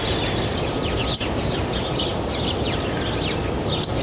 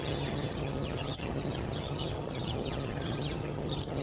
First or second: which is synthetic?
second